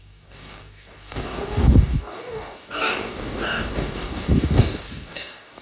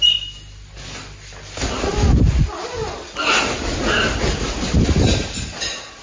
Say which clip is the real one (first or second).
second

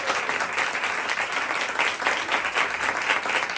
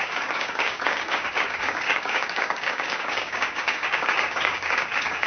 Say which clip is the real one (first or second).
first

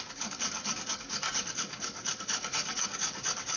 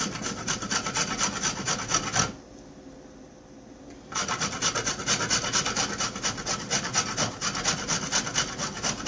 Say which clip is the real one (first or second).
second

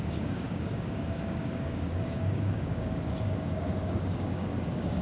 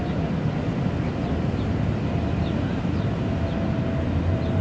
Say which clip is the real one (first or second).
second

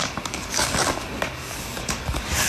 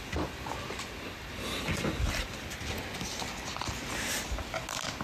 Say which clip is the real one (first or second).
second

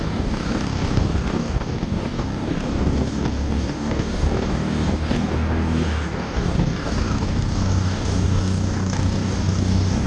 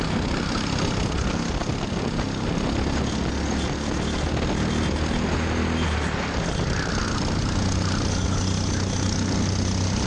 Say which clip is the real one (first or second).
second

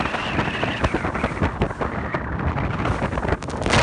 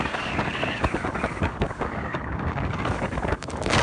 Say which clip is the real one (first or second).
first